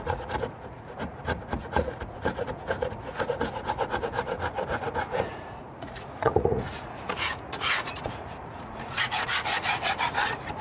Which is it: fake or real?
fake